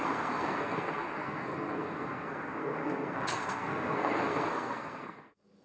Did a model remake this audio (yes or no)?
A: yes